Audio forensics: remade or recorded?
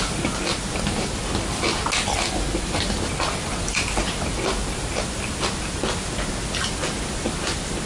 recorded